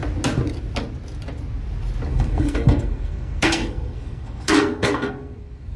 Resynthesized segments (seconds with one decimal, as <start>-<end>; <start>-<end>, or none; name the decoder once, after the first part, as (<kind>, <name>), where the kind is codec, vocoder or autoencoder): 2.1-5.8 (codec, SNAC)